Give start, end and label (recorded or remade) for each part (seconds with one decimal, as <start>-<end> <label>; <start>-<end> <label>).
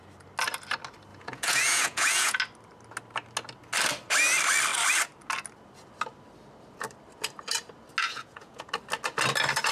0.0-1.1 recorded; 1.1-2.4 remade; 2.4-8.0 recorded; 8.0-8.7 remade; 8.7-9.7 recorded